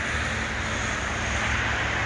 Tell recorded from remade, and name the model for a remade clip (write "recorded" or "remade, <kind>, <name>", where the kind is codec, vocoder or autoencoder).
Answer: recorded